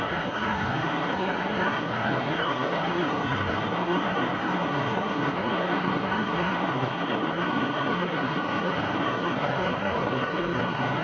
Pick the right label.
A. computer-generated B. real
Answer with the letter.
A